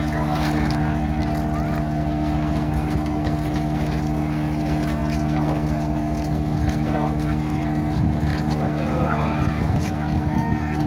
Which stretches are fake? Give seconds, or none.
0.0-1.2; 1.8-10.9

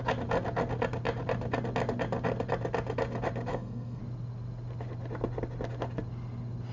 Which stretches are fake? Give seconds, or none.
3.5-4.0

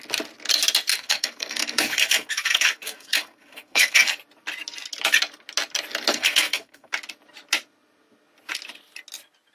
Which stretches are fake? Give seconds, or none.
0.9-4.2; 6.1-6.9

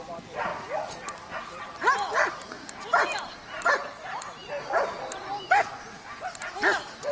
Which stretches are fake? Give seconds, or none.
none

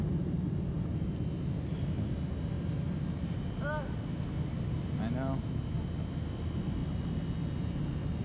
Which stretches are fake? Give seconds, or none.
none

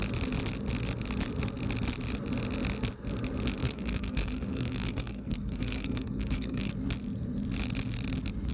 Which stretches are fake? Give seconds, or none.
3.6-6.7

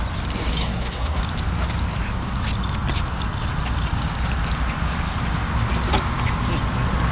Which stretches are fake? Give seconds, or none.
0.6-1.2